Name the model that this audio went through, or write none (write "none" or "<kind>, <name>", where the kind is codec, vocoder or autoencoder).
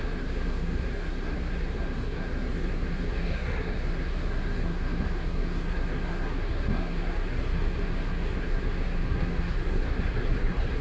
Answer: codec, SNAC